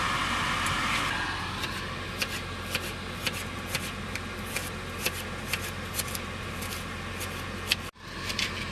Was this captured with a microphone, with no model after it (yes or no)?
yes